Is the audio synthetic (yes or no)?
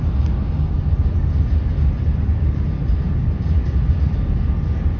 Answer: no